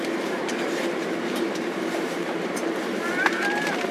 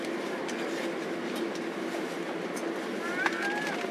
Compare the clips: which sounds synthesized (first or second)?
first